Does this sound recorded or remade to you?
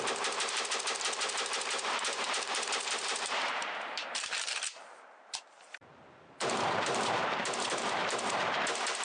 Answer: remade